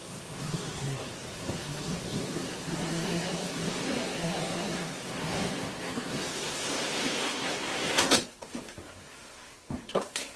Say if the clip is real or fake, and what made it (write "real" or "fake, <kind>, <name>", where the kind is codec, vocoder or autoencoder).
fake, codec, SNAC